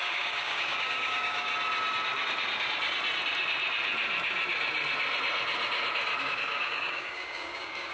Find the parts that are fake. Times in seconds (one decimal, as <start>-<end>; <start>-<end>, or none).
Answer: 0.0-1.5; 6.2-7.9